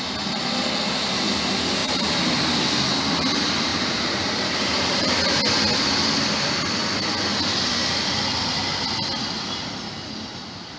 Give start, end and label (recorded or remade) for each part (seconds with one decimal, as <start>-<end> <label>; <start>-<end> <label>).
0.0-1.8 recorded; 1.8-2.3 remade; 2.3-3.7 recorded; 3.7-5.1 remade; 5.1-10.8 recorded